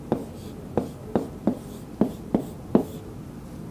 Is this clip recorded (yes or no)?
yes